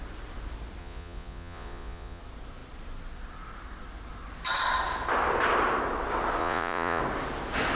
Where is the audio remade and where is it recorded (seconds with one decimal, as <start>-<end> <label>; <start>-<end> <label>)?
0.0-0.8 recorded; 0.8-2.2 remade; 2.2-6.4 recorded; 6.4-7.0 remade; 7.0-7.8 recorded